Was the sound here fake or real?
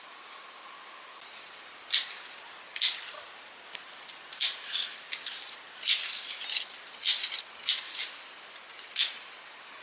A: real